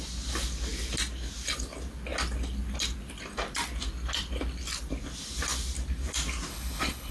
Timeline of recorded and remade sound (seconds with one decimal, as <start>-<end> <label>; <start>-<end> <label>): 0.0-6.5 recorded; 6.5-7.1 remade